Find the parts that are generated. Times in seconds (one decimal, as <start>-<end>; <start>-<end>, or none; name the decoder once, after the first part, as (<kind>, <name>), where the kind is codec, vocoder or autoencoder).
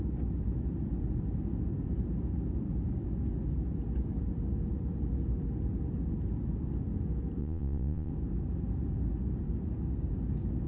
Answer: 7.4-8.1 (vocoder, Vocos)